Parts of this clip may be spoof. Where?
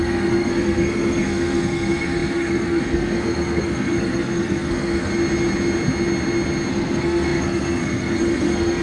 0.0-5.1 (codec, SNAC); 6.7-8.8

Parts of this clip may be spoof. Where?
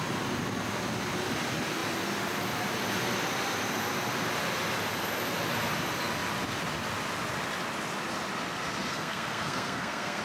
8.9-10.2 (codec, SNAC)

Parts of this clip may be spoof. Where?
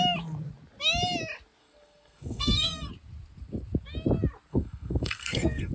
1.6-2.9 (codec, SNAC); 4.5-5.7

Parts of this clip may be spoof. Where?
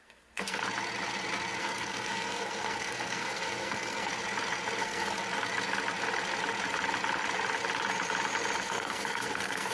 0.0-0.6 (codec, SNAC); 1.6-4.1; 4.8-5.2; 8.6-9.7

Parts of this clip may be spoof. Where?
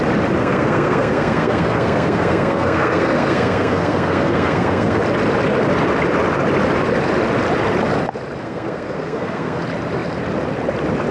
0.4-5.0 (codec, SNAC); 8.4-9.6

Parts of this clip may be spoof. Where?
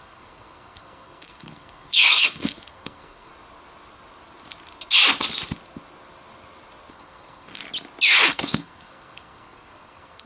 0.0-3.3 (codec, SNAC); 6.9-7.6; 8.3-10.3